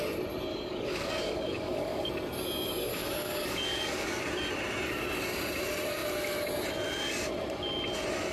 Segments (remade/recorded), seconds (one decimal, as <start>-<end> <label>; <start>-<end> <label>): 0.0-0.5 recorded; 0.5-2.1 remade; 2.1-2.9 recorded; 2.9-4.3 remade; 4.3-8.3 recorded